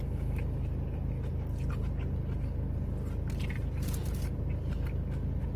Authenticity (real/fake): real